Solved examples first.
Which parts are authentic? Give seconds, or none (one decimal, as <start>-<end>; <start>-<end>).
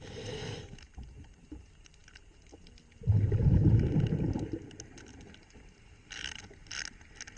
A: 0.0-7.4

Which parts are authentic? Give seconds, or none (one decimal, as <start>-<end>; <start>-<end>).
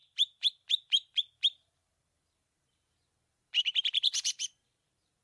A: none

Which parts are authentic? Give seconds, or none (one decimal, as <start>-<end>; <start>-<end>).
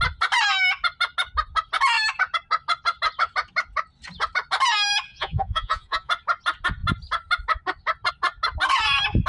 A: 0.0-5.1; 6.1-9.3